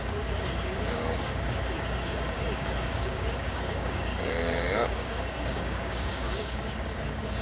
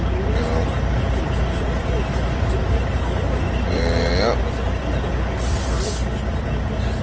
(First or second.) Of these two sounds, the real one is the second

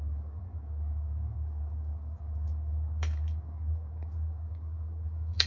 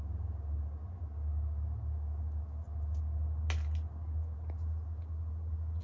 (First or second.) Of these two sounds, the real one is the second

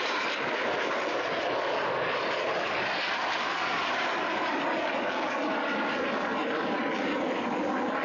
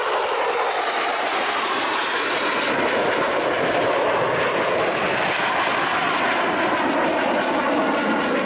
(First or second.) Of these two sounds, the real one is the second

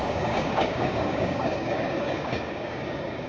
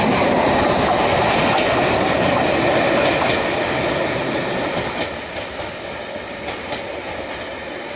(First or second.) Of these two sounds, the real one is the second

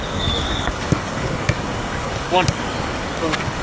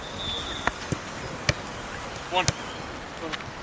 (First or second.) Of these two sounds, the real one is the second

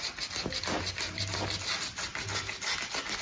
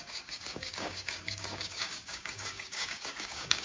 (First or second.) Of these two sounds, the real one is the first